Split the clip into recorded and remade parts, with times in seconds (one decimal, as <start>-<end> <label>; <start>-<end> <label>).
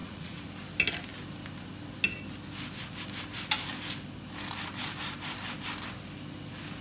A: 0.0-0.5 remade; 0.5-6.8 recorded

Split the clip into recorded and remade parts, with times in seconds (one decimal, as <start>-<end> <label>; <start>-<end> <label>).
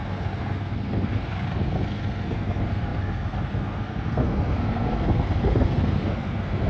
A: 0.0-6.7 remade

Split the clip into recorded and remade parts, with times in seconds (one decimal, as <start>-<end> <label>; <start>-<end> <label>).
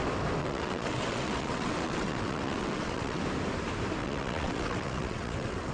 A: 0.0-0.4 recorded; 0.4-3.2 remade; 3.2-4.0 recorded; 4.0-5.7 remade